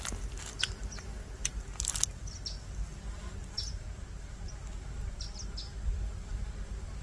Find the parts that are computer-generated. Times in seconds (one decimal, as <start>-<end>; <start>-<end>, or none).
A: none